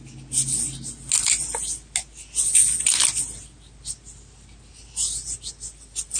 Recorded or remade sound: recorded